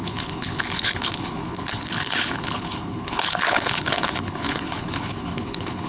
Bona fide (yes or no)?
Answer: no